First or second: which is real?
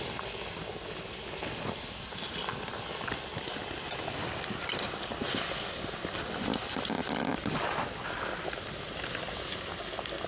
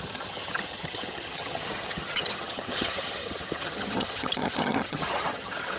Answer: first